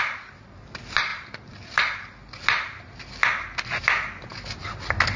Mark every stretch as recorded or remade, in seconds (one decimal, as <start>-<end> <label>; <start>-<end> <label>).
0.0-1.1 recorded; 1.1-2.3 remade; 2.3-5.2 recorded